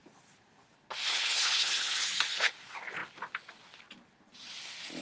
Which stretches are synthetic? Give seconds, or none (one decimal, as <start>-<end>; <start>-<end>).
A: 1.1-2.5